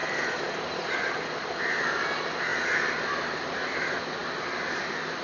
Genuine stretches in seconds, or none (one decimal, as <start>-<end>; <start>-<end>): 0.0-5.2